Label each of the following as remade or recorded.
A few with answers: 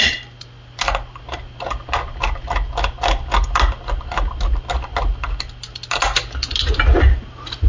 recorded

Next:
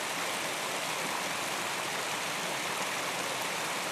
recorded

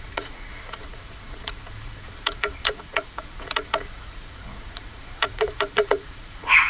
remade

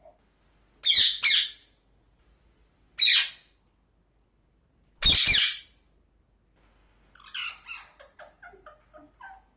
recorded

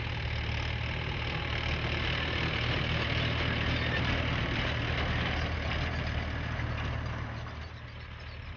recorded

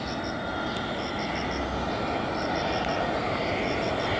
recorded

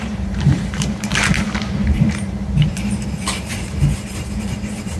remade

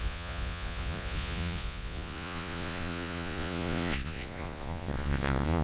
remade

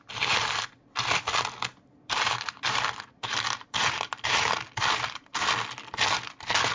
recorded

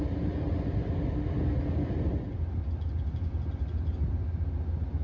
recorded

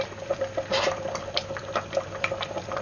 remade